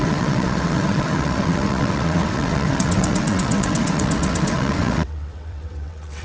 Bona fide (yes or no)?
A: no